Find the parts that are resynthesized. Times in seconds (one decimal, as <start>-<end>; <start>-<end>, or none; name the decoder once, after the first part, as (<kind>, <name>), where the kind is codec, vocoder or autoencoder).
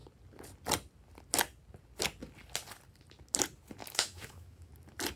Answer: 3.8-4.7 (autoencoder, DAC-VAE)